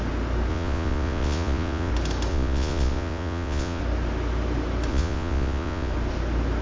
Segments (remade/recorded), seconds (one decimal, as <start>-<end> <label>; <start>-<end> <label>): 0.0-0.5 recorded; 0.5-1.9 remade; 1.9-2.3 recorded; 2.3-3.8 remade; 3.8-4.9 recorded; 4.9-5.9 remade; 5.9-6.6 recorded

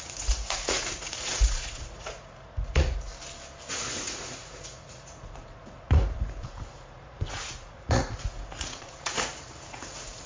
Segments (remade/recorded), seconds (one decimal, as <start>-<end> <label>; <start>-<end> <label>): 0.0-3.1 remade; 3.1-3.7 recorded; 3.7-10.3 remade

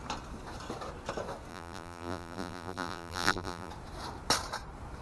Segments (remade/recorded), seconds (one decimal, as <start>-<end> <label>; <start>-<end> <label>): 0.0-1.5 recorded; 1.5-3.7 remade; 3.7-5.0 recorded